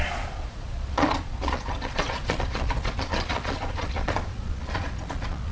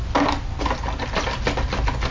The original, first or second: second